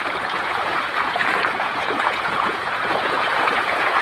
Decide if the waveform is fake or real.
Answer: fake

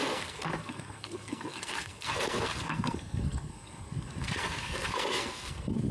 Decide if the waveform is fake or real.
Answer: fake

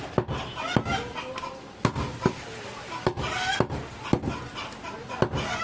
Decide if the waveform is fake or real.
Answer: real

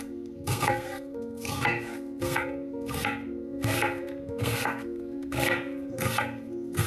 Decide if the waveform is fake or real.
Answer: fake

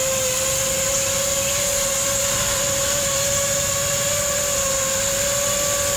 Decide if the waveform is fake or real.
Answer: real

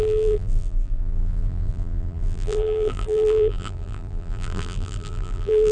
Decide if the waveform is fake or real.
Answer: fake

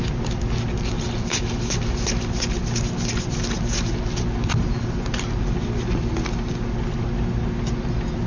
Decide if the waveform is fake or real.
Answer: real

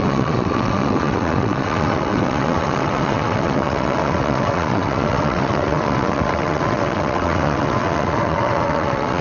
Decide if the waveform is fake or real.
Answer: fake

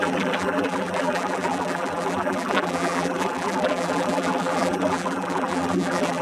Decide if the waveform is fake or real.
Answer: fake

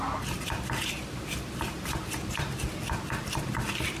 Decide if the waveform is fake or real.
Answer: fake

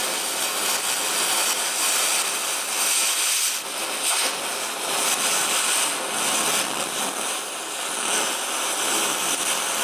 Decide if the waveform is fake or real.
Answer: real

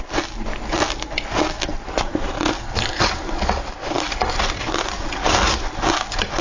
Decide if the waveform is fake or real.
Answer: real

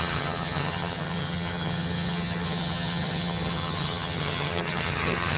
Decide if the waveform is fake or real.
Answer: fake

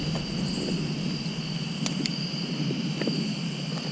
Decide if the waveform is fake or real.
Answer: real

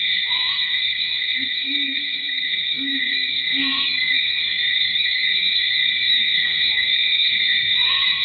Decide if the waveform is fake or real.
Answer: fake